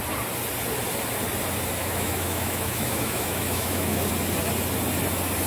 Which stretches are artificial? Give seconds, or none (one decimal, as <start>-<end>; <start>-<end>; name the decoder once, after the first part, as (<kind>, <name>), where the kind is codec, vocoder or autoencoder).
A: 1.8-4.1 (autoencoder, DAC-VAE)